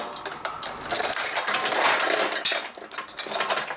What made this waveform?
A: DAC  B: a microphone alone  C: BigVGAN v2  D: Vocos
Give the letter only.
B